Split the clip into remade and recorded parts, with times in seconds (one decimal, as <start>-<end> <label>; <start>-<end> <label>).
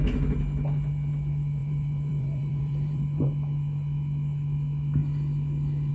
0.0-1.6 recorded; 1.6-3.2 remade; 3.2-5.9 recorded